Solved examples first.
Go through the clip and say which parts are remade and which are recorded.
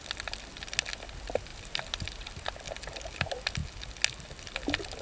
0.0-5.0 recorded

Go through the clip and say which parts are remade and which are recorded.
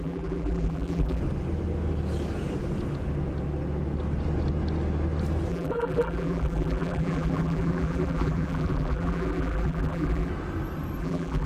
0.0-1.2 remade; 1.2-5.5 recorded; 5.5-10.3 remade; 10.3-11.0 recorded; 11.0-11.5 remade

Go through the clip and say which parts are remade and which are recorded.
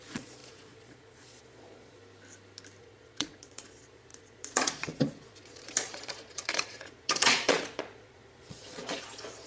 0.0-2.0 remade; 2.0-2.8 recorded; 2.8-9.5 remade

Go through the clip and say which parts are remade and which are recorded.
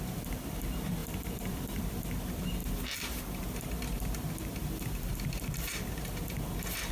0.0-1.0 recorded; 1.0-2.0 remade; 2.0-2.6 recorded; 2.6-3.6 remade; 3.6-4.6 recorded; 4.6-5.1 remade; 5.1-6.9 recorded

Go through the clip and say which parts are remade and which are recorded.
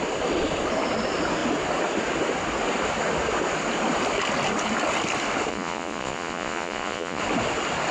0.0-5.5 recorded; 5.5-7.2 remade; 7.2-7.9 recorded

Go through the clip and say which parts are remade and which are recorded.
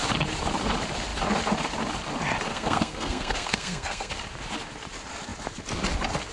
0.0-2.5 recorded; 2.5-4.1 remade; 4.1-6.3 recorded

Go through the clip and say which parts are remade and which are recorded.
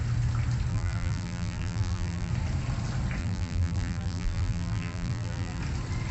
0.0-0.7 recorded; 0.7-2.3 remade; 2.3-3.2 recorded; 3.2-5.6 remade; 5.6-6.1 recorded